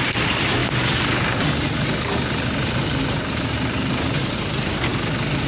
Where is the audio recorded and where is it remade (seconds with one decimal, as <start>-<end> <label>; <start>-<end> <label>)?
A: 0.0-0.6 remade; 0.6-3.0 recorded; 3.0-5.5 remade